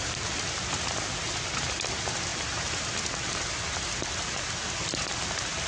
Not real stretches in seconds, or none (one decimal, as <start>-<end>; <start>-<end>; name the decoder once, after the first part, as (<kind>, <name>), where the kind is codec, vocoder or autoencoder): 2.3-2.9 (vocoder, BigVGAN v2)